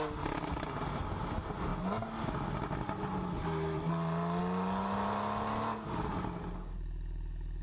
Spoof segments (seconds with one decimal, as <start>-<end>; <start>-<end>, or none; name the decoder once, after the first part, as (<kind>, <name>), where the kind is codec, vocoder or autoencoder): none